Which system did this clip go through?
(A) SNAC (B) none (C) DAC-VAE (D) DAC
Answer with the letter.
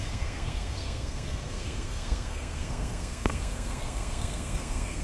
A